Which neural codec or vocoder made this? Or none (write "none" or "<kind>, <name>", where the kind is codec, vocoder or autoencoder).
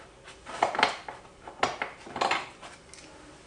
none